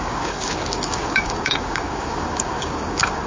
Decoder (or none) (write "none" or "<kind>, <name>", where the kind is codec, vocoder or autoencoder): codec, DAC